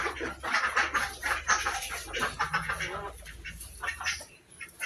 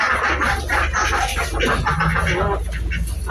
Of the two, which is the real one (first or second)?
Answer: second